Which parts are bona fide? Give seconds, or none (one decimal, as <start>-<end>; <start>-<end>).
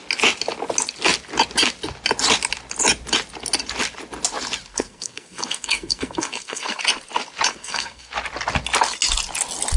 0.0-4.7; 6.8-7.5; 8.1-9.8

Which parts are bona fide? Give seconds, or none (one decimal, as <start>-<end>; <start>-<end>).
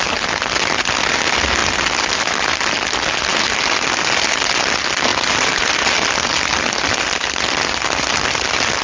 0.0-8.8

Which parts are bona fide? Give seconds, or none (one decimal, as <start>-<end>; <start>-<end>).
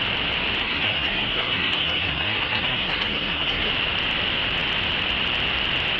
0.0-0.6; 3.7-6.0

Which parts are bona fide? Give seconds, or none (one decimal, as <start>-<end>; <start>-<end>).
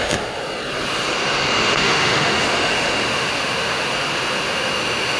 0.4-1.8; 3.9-4.5